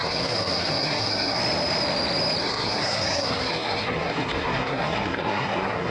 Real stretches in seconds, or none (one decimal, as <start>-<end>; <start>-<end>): 1.4-2.4

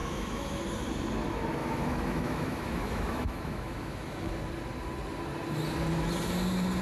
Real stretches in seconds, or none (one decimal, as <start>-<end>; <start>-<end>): 0.6-1.6; 4.3-6.8

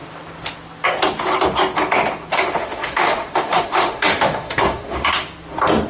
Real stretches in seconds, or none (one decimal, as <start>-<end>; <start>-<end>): 0.0-2.3; 5.1-5.9

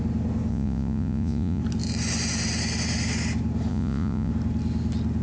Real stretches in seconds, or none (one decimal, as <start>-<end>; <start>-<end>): 0.0-0.5; 1.6-3.7; 4.3-5.2

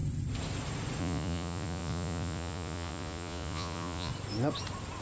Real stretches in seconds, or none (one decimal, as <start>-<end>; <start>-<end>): 0.0-1.0; 4.1-5.0

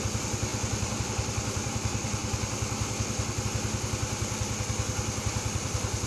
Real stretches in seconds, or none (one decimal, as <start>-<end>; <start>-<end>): 2.2-5.2

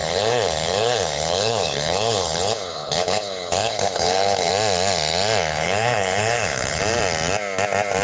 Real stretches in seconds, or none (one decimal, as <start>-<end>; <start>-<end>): 4.5-5.5; 6.8-8.0